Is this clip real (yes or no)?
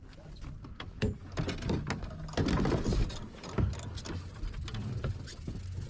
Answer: yes